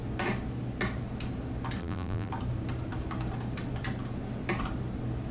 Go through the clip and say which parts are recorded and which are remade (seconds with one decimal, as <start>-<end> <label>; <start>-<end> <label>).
0.0-1.8 recorded; 1.8-2.3 remade; 2.3-5.3 recorded